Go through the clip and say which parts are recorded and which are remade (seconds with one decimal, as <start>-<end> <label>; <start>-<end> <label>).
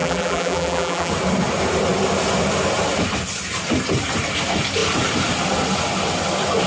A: 0.0-1.1 remade; 1.1-6.7 recorded